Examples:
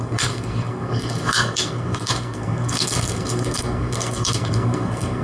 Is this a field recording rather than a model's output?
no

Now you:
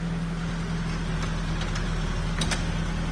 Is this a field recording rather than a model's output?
yes